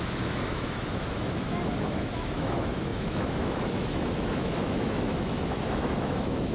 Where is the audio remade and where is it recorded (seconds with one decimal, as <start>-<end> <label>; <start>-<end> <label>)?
0.0-6.5 remade